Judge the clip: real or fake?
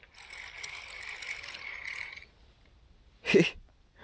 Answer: real